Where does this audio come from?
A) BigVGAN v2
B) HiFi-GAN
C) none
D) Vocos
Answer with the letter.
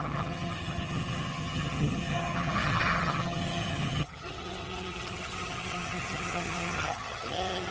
B